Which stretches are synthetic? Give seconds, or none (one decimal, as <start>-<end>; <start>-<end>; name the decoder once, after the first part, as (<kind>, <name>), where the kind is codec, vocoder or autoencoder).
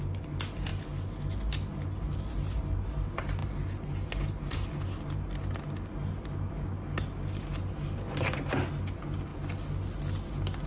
none